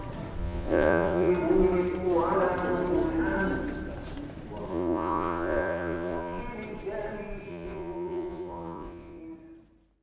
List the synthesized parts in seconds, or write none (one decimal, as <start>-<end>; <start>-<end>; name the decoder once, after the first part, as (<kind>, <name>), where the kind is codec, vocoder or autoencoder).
0.4-1.3 (vocoder, Vocos); 4.7-6.4; 7.5-9.2